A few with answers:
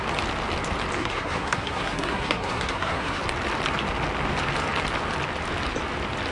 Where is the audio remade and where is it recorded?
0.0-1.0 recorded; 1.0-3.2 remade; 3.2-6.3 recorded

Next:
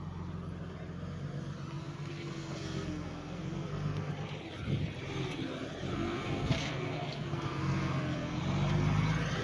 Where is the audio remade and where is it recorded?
0.0-1.8 recorded; 1.8-4.1 remade; 4.1-5.9 recorded; 5.9-8.4 remade; 8.4-9.4 recorded

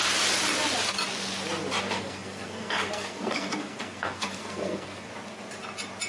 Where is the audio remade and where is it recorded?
0.0-1.8 recorded; 1.8-5.1 remade; 5.1-6.1 recorded

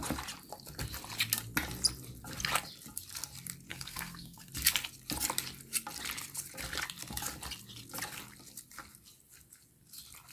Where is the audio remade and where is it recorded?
0.0-3.7 recorded; 3.7-4.5 remade; 4.5-10.3 recorded

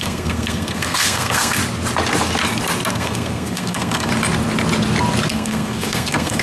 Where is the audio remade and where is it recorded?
0.0-1.6 remade; 1.6-2.9 recorded; 2.9-4.1 remade; 4.1-5.3 recorded; 5.3-6.4 remade